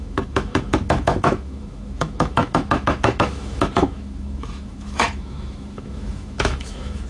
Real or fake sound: fake